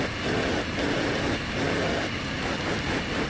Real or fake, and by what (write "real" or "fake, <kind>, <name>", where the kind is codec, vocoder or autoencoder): real